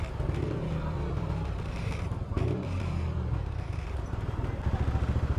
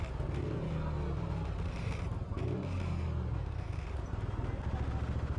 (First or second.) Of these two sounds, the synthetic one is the first